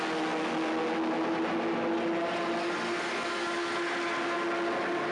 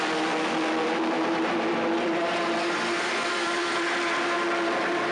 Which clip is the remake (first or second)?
second